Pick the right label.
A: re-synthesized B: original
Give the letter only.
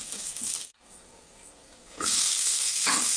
A